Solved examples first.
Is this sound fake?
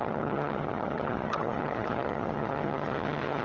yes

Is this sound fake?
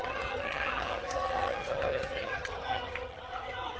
yes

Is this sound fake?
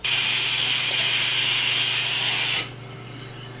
no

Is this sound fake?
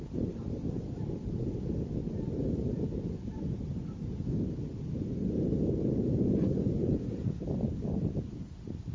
no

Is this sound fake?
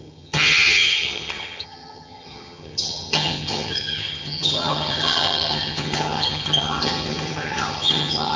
yes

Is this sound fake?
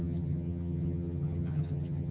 yes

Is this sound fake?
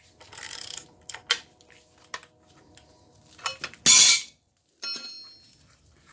no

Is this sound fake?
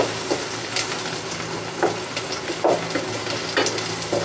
no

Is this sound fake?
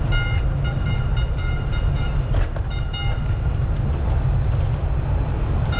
no